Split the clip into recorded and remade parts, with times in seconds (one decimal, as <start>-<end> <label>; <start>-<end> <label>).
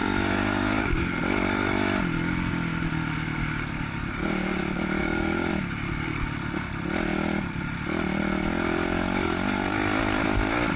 0.0-1.2 remade; 1.2-3.4 recorded; 3.4-4.6 remade; 4.6-5.0 recorded; 5.0-5.5 remade; 5.5-10.8 recorded